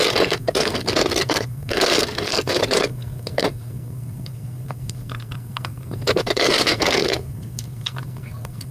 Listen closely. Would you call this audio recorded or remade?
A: remade